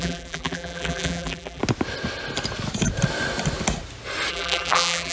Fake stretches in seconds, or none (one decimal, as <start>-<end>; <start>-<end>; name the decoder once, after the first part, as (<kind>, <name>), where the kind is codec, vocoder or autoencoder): 0.0-1.6 (vocoder, BigVGAN v2); 4.3-5.1